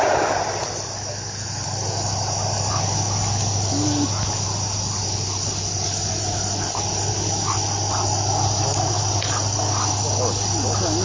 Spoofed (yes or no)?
no